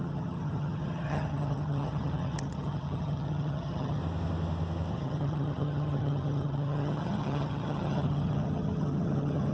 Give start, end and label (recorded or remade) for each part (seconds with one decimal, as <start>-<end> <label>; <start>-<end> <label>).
0.0-4.0 remade; 4.0-4.9 recorded; 4.9-9.5 remade